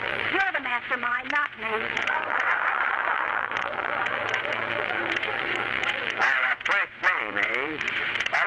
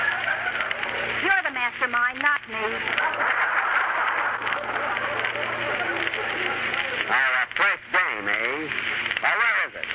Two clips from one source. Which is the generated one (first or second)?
first